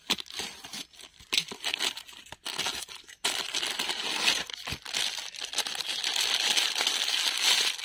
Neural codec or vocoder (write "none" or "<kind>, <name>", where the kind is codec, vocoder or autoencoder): none